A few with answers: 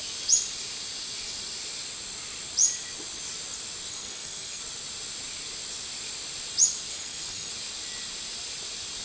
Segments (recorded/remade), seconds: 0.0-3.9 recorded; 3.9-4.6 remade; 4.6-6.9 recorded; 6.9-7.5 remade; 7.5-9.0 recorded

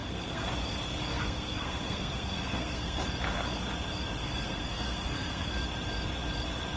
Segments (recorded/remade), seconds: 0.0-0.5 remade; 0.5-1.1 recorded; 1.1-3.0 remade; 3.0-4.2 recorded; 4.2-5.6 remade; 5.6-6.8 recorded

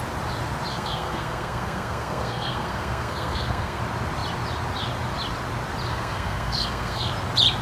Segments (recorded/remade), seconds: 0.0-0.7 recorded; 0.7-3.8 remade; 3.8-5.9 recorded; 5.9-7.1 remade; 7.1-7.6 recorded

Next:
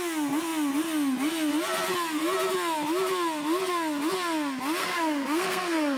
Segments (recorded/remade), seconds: 0.0-4.8 recorded; 4.8-6.0 remade

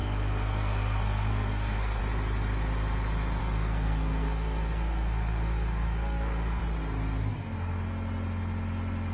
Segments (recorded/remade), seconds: 0.0-2.0 remade; 2.0-3.4 recorded; 3.4-6.6 remade; 6.6-9.1 recorded

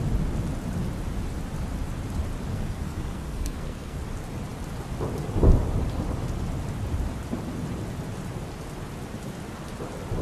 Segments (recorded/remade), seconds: 0.0-2.5 recorded; 2.5-4.0 remade; 4.0-10.2 recorded

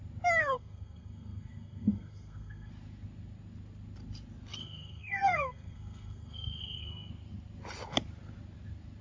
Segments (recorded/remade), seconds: 0.0-0.4 recorded; 0.4-2.7 remade; 2.7-4.6 recorded; 4.6-7.1 remade; 7.1-9.0 recorded